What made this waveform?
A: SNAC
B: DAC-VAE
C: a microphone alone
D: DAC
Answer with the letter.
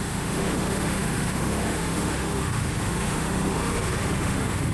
B